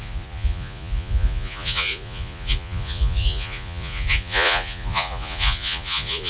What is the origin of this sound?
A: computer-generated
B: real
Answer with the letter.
A